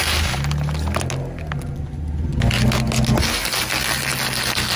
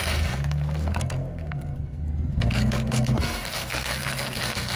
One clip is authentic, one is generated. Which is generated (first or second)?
second